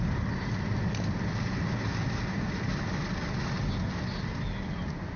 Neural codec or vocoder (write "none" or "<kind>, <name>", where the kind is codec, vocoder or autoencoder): none